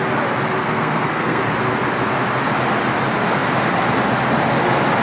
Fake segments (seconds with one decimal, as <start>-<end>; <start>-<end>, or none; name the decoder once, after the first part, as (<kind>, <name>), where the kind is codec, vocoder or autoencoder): 0.6-1.4 (codec, SNAC)